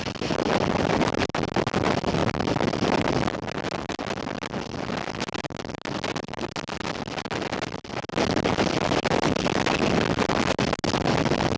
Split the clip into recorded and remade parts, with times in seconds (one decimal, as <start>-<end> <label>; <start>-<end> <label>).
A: 0.0-11.6 recorded